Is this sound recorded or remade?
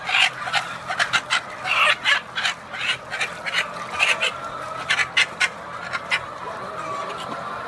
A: recorded